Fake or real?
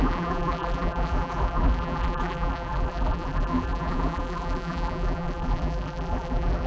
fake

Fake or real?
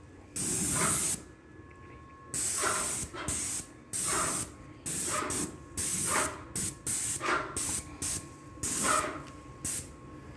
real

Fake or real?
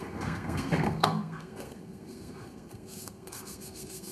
fake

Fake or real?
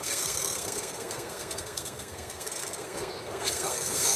fake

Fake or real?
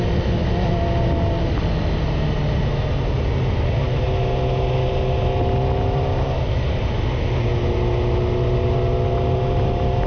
real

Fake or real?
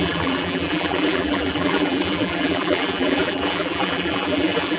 fake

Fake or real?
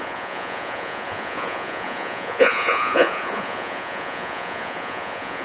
fake